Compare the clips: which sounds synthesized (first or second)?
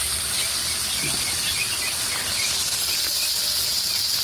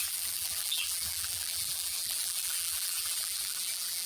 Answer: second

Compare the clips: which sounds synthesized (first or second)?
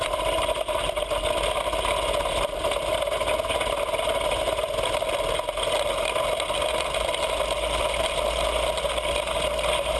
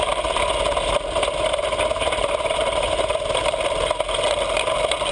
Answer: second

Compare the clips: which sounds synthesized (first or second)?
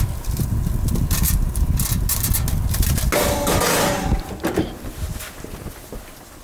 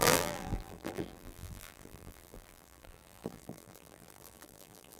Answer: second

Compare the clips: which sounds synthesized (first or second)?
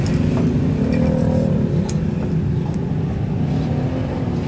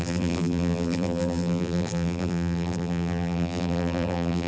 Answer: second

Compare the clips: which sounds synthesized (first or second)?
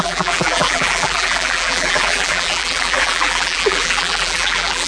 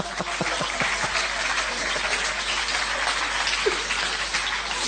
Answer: first